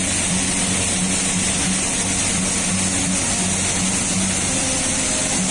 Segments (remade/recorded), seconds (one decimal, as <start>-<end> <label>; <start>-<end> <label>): 0.0-5.5 recorded